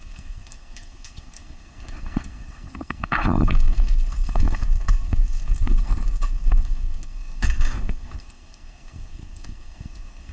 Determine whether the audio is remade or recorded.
remade